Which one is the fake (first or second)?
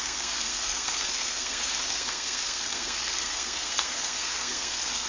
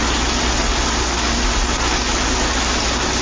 first